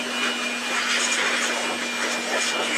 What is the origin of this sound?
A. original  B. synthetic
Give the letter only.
A